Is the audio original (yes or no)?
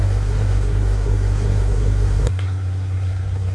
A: no